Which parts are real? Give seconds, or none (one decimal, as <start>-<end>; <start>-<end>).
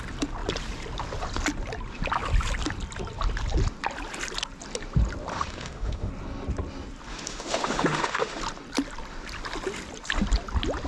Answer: 0.0-5.3; 6.1-7.1; 8.4-10.9